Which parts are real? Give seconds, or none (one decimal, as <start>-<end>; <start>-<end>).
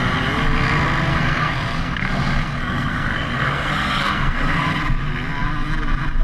0.0-1.1; 4.8-6.2